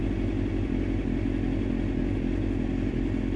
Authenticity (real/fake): real